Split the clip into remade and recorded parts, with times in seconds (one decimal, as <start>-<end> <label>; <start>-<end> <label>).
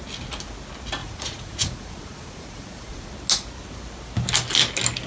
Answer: 0.0-1.0 recorded; 1.0-3.1 remade; 3.1-5.1 recorded